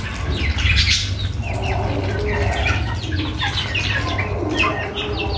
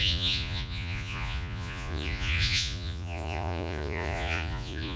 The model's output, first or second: second